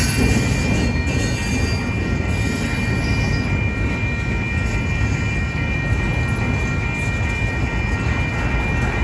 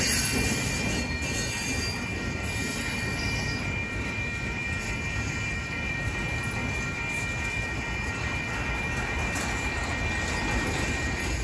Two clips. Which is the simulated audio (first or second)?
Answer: second